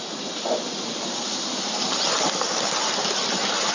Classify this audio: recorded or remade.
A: recorded